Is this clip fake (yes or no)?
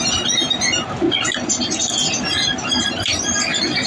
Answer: no